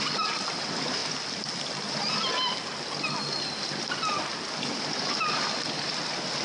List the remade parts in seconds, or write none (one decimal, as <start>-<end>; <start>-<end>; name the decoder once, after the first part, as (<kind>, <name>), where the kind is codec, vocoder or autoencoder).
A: none